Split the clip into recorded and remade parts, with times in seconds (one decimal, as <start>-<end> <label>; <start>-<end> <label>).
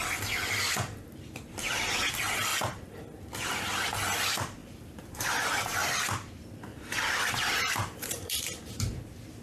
0.0-2.5 recorded; 2.5-3.0 remade; 3.0-4.6 recorded; 4.6-5.5 remade; 5.5-6.7 recorded; 6.7-8.7 remade; 8.7-9.4 recorded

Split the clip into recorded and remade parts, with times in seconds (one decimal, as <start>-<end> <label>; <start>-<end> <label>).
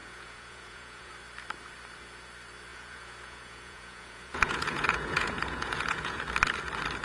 0.0-1.1 remade; 1.1-2.7 recorded; 2.7-6.2 remade; 6.2-7.0 recorded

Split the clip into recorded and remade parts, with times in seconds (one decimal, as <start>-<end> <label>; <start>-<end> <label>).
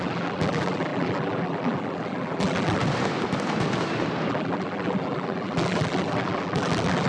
0.0-2.8 remade; 2.8-4.3 recorded; 4.3-7.1 remade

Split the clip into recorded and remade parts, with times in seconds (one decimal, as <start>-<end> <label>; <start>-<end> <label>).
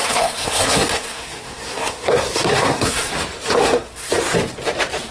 0.0-3.1 remade; 3.1-3.6 recorded; 3.6-4.1 remade; 4.1-5.1 recorded